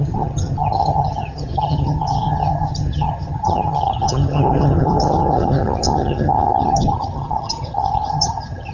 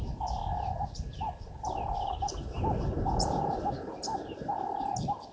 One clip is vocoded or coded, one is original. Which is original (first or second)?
second